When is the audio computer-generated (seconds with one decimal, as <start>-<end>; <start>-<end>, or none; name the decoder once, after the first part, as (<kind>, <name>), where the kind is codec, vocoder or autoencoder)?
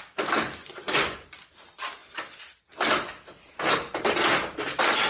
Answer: 0.6-1.5 (vocoder, Vocos)